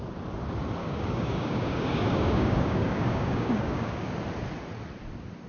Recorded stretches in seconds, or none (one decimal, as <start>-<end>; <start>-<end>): 0.0-0.8; 4.1-5.5